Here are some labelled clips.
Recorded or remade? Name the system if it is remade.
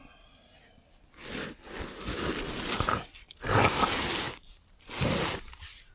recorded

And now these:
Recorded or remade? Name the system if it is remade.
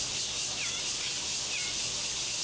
recorded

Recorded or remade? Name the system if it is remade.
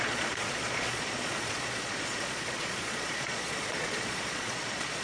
remade, vocoder, Vocos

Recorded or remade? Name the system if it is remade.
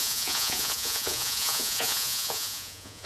remade, vocoder, Vocos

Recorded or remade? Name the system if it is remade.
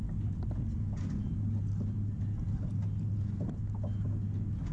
recorded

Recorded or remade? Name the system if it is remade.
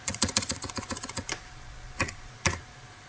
remade, vocoder, Vocos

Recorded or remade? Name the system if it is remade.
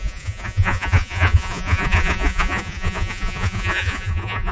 remade, vocoder, Vocos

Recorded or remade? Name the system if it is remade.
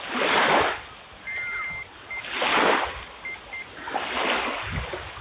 recorded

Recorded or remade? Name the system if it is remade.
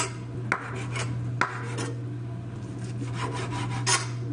recorded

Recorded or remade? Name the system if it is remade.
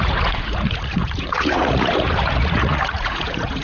remade, vocoder, Vocos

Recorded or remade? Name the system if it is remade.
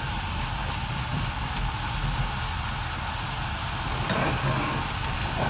recorded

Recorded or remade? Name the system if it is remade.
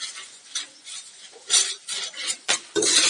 remade, vocoder, Vocos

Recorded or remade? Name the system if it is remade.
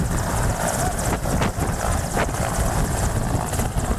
recorded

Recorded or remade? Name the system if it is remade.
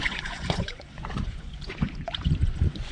remade, vocoder, Vocos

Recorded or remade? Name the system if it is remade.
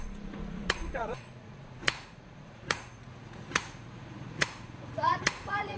remade, vocoder, Vocos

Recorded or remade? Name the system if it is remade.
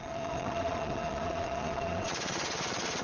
remade, vocoder, Vocos